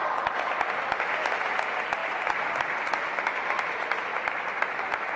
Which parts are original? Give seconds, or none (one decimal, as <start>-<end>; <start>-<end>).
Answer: 0.0-2.0; 2.5-4.1; 4.8-5.2